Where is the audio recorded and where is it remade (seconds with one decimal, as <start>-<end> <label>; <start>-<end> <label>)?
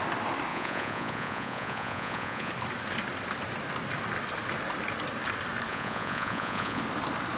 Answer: 0.0-0.5 recorded; 0.5-2.5 remade; 2.5-5.7 recorded; 5.7-6.8 remade; 6.8-7.4 recorded